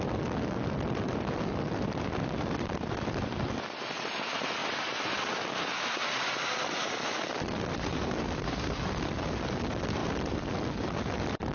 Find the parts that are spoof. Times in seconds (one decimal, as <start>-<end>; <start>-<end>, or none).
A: 10.0-10.5